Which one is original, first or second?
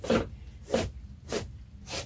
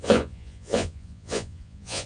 first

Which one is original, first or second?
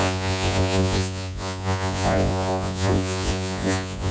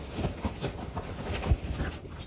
second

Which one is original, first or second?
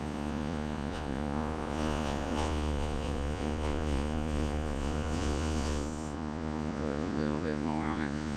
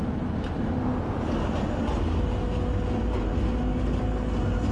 second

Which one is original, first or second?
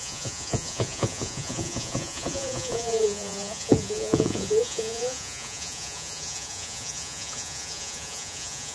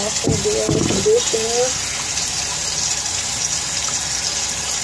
second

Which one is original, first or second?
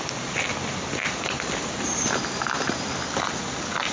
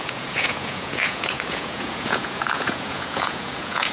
first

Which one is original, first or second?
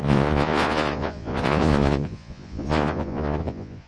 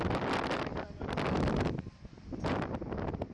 second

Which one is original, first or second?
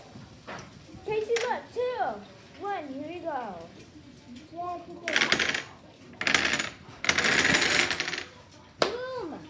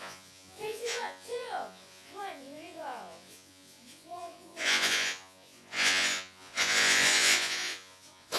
first